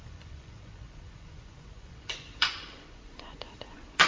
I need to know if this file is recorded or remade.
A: remade